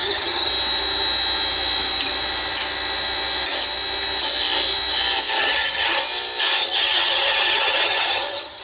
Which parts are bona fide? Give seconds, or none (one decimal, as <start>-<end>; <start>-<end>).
0.5-5.4; 6.0-6.6